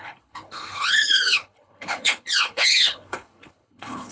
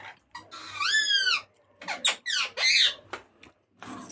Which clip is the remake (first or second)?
first